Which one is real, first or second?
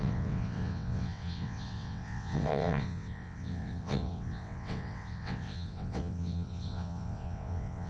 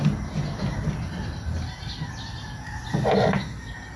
second